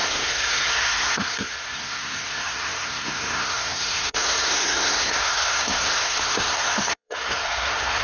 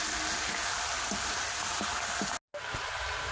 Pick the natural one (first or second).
second